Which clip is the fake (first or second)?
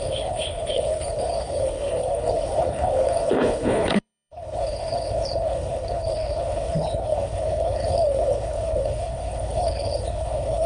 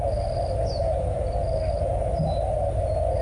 first